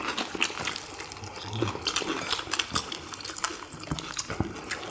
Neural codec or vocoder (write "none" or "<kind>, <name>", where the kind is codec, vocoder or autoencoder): none